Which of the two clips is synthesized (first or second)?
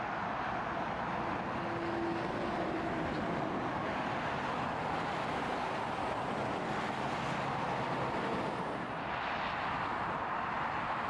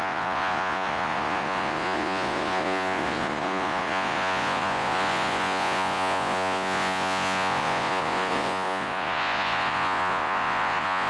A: second